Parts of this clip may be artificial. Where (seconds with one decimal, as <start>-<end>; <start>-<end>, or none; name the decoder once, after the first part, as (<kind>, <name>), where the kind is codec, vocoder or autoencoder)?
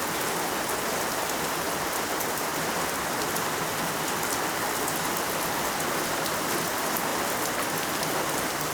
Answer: none